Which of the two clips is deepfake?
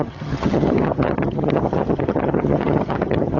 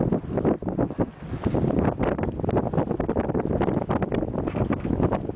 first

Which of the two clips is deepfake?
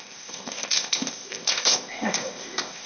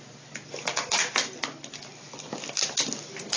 first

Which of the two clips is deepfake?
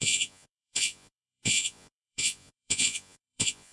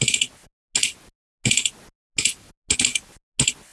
first